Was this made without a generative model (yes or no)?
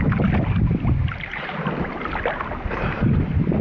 yes